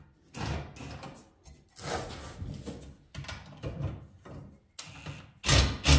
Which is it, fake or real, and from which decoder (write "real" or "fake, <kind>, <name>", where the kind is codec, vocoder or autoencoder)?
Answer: real